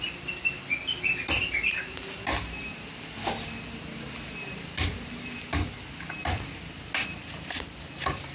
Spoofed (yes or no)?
no